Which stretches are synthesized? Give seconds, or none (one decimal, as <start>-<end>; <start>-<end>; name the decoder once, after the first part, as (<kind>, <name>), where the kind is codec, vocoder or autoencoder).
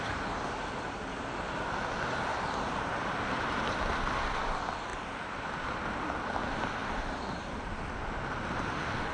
2.3-3.6 (vocoder, BigVGAN v2)